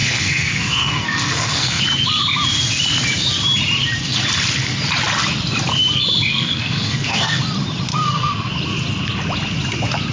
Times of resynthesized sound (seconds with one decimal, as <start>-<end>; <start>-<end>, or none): 0.0-1.8; 6.3-7.4; 7.9-8.5